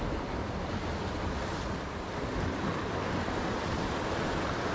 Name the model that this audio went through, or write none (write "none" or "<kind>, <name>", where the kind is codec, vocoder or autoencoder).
none